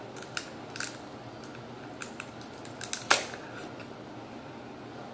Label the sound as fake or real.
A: real